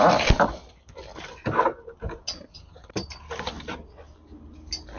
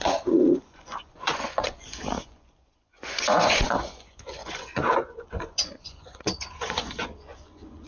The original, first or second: first